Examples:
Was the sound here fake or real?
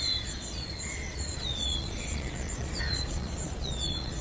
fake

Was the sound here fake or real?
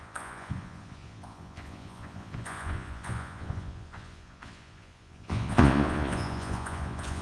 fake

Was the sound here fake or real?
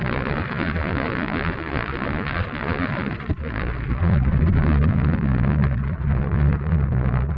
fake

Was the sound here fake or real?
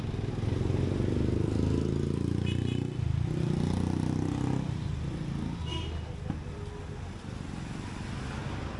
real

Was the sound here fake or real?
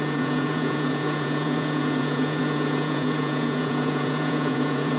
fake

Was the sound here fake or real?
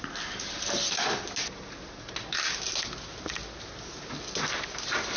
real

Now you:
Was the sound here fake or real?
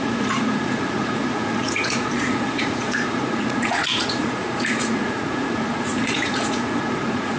fake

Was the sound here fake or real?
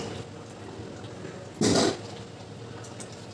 real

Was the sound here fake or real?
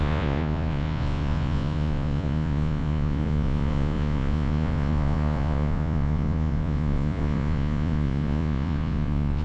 fake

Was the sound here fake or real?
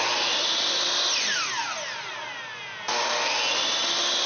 real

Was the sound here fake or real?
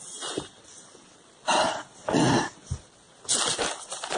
real